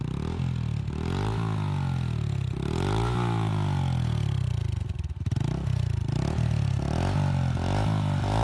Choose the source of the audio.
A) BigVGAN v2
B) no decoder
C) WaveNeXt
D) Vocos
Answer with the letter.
B